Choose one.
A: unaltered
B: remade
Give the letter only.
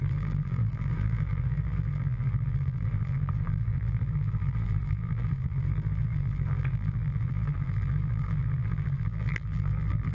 B